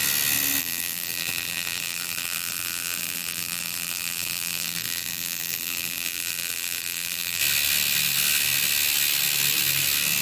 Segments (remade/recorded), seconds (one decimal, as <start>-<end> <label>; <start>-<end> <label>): 0.0-0.6 recorded; 0.6-7.4 remade; 7.4-10.2 recorded

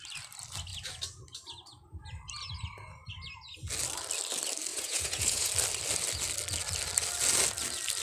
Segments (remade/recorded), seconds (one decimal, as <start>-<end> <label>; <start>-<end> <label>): 0.0-4.7 recorded; 4.7-5.5 remade; 5.5-8.0 recorded

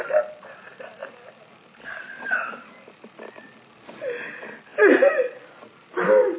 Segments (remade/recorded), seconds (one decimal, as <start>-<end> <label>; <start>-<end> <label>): 0.0-6.4 recorded

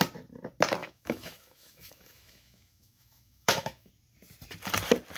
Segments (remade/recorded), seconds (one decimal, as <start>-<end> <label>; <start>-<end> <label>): 0.0-0.8 recorded; 0.8-3.9 remade; 3.9-5.2 recorded

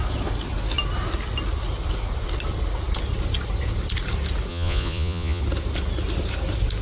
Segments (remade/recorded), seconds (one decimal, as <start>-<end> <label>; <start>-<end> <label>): 0.0-4.5 recorded; 4.5-5.4 remade; 5.4-6.8 recorded

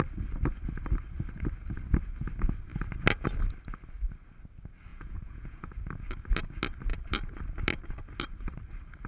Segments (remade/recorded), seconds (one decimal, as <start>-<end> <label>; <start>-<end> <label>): 0.0-4.9 recorded; 4.9-5.7 remade; 5.7-9.1 recorded